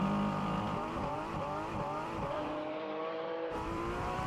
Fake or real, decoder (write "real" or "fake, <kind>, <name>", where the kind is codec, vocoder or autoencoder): fake, vocoder, BigVGAN v2